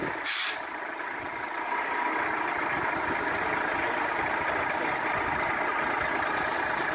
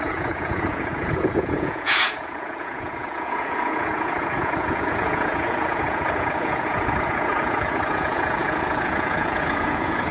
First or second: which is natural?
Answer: first